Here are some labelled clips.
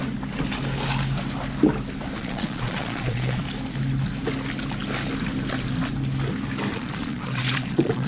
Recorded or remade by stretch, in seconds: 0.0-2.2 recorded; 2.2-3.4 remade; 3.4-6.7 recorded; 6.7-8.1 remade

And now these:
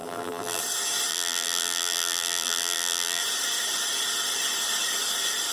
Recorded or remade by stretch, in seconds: 0.0-0.6 remade; 0.6-1.1 recorded; 1.1-3.2 remade; 3.2-5.5 recorded